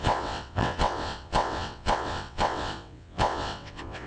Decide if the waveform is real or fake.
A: fake